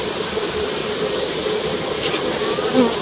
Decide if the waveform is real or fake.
real